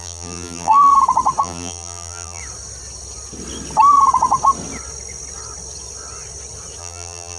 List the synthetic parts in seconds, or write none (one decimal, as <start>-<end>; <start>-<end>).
0.0-0.9; 1.4-2.4; 6.8-7.4